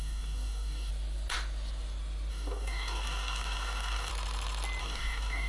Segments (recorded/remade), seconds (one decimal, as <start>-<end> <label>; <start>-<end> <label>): 0.0-0.9 remade; 0.9-2.3 recorded; 2.3-4.1 remade; 4.1-4.8 recorded; 4.8-5.5 remade